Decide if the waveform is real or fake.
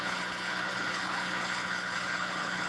fake